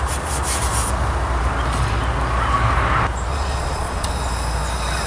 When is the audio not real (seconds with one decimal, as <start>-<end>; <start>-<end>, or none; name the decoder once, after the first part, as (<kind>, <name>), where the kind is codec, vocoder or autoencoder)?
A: 3.3-4.1 (vocoder, Vocos)